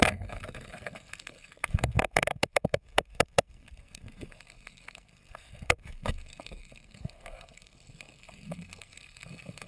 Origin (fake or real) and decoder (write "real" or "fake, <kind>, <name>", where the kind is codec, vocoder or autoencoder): fake, codec, SNAC